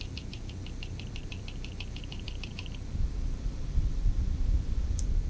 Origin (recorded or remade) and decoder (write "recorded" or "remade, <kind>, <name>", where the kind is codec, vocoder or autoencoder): remade, vocoder, BigVGAN v2